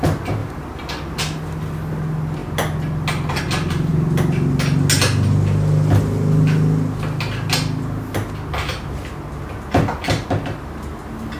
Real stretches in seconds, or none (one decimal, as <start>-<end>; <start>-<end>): 0.0-11.4